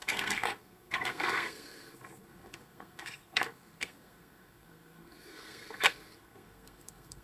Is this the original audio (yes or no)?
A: no